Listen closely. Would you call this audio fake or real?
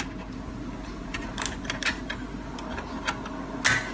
real